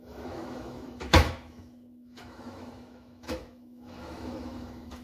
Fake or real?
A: fake